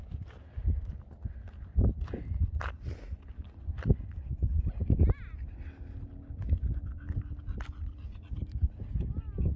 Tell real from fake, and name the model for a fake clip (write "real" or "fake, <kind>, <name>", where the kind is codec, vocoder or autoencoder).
real